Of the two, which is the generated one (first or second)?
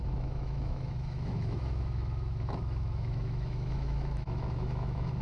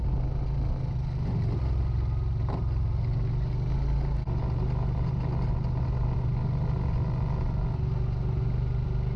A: first